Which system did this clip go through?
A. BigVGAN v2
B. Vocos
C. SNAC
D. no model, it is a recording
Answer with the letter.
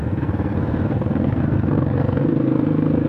C